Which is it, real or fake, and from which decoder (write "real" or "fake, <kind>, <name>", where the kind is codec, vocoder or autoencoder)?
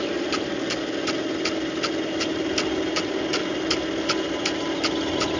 real